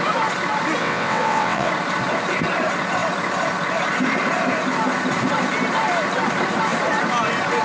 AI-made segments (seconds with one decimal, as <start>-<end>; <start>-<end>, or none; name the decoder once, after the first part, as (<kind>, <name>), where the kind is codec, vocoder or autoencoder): 0.8-1.7 (vocoder, WaveNeXt)